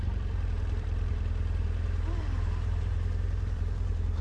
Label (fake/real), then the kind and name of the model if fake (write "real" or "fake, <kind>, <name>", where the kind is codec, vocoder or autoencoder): fake, vocoder, BigVGAN v2